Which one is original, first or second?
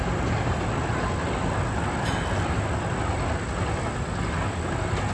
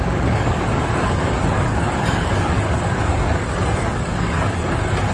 first